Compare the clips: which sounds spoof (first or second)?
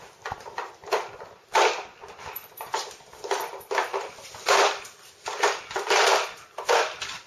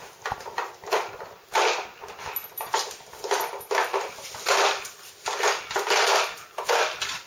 first